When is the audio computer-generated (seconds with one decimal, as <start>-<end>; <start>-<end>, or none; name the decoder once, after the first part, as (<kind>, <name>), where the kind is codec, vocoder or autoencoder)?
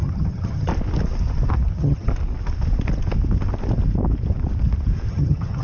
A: 0.0-0.7 (vocoder, HiFi-GAN); 1.7-2.1; 5.1-5.6